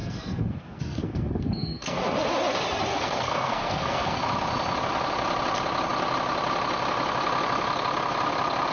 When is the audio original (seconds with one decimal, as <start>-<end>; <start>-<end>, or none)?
2.0-2.9; 4.2-8.7